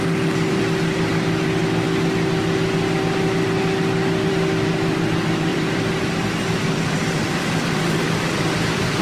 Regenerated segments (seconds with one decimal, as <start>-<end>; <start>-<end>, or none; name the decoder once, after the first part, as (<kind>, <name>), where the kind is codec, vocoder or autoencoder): 5.5-9.0 (vocoder, BigVGAN v2)